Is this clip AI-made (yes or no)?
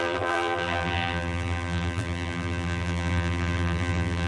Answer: yes